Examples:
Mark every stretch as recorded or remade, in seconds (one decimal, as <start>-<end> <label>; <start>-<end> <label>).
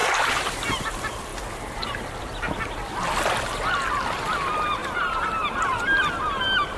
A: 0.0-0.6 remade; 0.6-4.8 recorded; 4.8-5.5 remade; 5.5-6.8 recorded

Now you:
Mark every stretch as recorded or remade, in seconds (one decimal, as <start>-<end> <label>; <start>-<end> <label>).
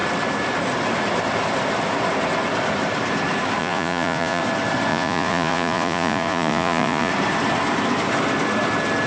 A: 0.0-3.6 recorded; 3.6-4.4 remade; 4.4-4.9 recorded; 4.9-7.1 remade; 7.1-9.1 recorded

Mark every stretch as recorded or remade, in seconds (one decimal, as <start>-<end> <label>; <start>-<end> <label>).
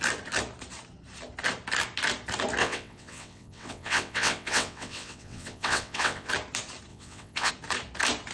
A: 0.0-2.6 recorded; 2.6-6.3 remade; 6.3-6.9 recorded; 6.9-7.5 remade; 7.5-8.3 recorded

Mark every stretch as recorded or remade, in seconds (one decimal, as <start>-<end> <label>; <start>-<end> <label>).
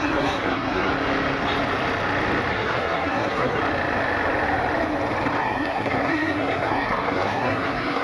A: 0.0-0.9 remade; 0.9-2.5 recorded; 2.5-3.6 remade; 3.6-5.4 recorded; 5.4-8.0 remade